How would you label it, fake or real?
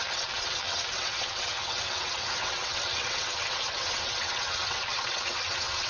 fake